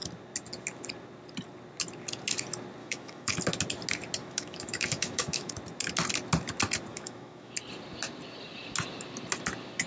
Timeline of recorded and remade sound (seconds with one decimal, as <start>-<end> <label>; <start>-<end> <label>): 0.0-2.8 recorded; 2.8-3.4 remade; 3.4-4.2 recorded; 4.2-5.5 remade; 5.5-6.9 recorded; 6.9-7.5 remade; 7.5-9.9 recorded